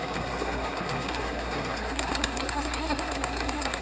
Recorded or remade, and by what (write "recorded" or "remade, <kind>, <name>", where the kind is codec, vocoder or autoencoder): remade, codec, SNAC